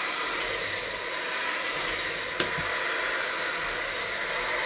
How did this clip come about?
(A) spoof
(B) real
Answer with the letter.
B